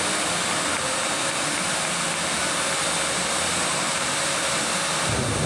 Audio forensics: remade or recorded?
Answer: recorded